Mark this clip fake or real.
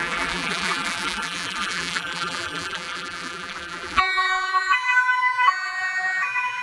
fake